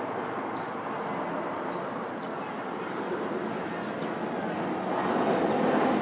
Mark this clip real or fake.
real